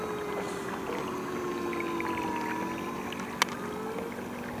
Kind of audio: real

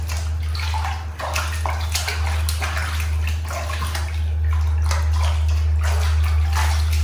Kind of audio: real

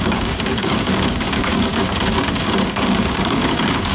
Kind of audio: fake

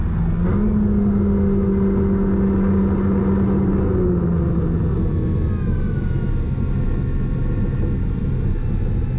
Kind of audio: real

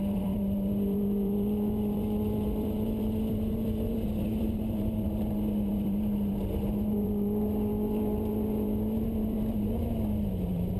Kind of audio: fake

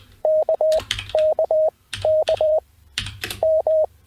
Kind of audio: fake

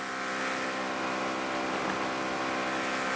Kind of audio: real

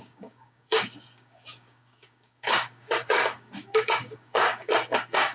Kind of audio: fake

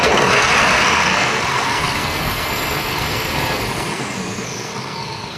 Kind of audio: fake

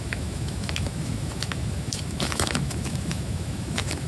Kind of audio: fake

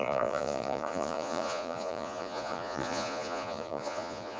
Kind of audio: fake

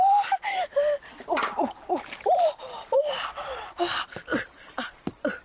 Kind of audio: fake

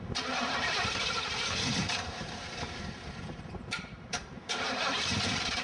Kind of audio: fake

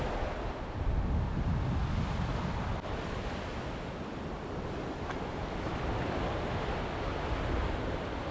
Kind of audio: real